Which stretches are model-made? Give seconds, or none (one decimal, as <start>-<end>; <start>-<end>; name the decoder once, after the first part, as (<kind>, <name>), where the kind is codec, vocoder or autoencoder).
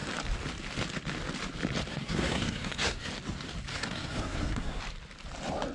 1.9-3.1 (codec, SNAC); 3.7-4.8